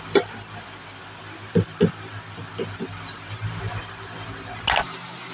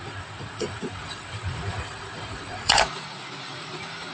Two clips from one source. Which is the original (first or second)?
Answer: first